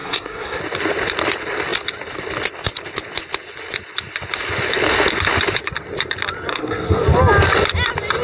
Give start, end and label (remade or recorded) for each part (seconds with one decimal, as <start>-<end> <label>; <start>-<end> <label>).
0.0-0.6 remade; 0.6-6.5 recorded; 6.5-7.0 remade; 7.0-8.2 recorded